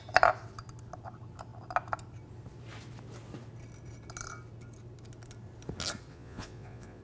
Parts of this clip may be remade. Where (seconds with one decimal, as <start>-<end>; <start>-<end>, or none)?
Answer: 6.1-7.0